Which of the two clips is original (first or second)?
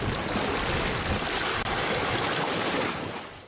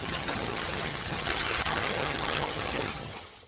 first